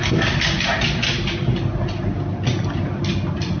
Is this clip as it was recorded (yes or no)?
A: yes